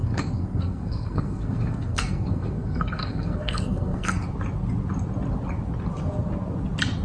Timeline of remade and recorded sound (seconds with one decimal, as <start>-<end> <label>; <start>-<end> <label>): 0.0-4.2 remade; 4.2-7.0 recorded